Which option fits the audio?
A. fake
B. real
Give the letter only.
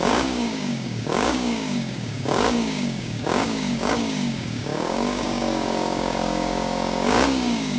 A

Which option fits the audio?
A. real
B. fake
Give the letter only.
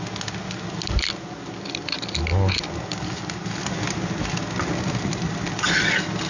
A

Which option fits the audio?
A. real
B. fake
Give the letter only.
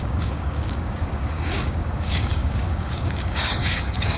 B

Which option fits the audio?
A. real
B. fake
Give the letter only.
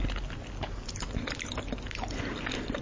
A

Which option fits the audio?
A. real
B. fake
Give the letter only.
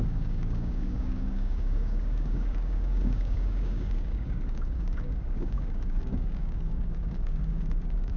B